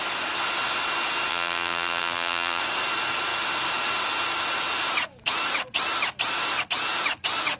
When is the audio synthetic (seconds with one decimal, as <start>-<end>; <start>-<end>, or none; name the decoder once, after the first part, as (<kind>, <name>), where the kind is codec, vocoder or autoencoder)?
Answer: 1.3-2.6 (vocoder, BigVGAN v2)